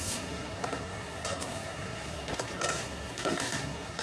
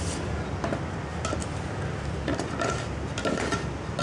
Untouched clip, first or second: second